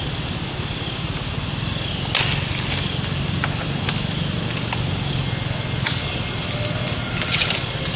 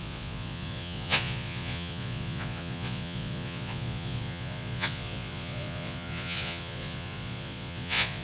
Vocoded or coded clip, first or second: second